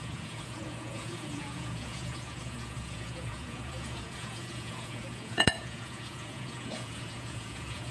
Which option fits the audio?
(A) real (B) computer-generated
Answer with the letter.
B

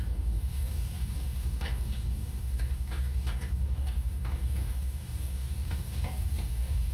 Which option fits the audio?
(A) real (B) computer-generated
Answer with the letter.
B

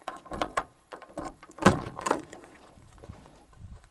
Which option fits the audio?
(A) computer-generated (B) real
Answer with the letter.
A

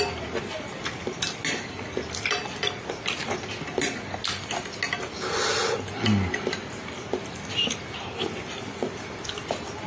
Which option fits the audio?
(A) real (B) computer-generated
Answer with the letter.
A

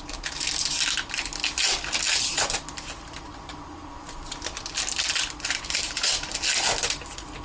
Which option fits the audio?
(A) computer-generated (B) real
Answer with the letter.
B